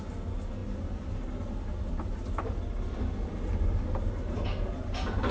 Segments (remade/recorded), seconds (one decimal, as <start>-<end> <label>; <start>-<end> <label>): 0.0-5.3 recorded